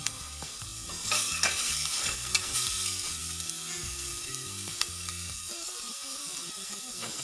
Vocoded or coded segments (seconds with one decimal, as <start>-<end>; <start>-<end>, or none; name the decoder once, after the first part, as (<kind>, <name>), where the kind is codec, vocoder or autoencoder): 0.0-7.2 (codec, SNAC)